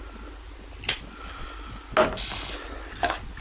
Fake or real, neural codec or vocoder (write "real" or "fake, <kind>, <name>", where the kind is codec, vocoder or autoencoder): real